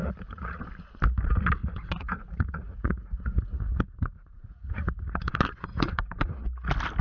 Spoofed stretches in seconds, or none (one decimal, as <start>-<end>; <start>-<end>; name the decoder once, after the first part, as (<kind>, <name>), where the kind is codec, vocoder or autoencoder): 0.0-0.6 (vocoder, Vocos); 1.6-5.3; 5.7-6.3